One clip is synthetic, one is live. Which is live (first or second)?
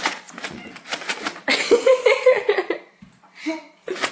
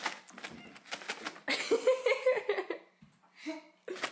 second